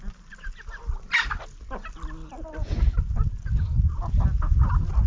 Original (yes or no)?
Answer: yes